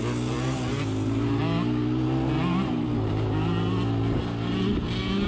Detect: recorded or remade recorded